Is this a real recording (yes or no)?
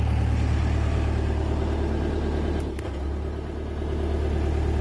yes